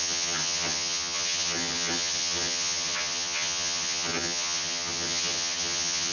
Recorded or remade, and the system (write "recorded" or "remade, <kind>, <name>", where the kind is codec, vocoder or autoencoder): remade, vocoder, HiFi-GAN